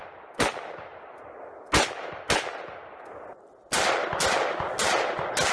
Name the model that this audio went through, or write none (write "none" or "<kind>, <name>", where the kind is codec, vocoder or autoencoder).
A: none